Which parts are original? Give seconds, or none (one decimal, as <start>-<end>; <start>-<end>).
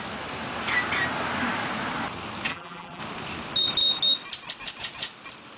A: 0.0-2.5; 3.0-5.6